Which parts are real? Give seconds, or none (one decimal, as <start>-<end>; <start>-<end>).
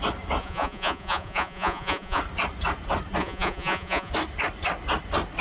0.0-0.4; 2.2-3.2; 4.1-5.4